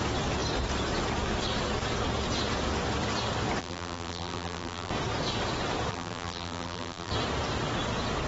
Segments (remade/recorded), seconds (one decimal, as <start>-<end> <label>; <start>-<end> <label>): 0.0-3.6 recorded; 3.6-4.9 remade; 4.9-5.9 recorded; 5.9-7.1 remade; 7.1-8.3 recorded